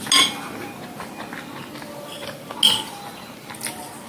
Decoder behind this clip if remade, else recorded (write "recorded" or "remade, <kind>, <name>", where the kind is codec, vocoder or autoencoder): recorded